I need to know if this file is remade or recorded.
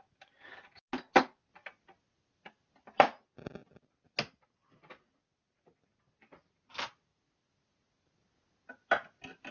recorded